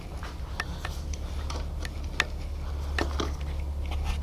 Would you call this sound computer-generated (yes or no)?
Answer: no